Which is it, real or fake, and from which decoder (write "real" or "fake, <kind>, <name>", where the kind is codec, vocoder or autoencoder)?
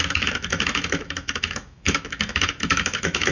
fake, autoencoder, DAC-VAE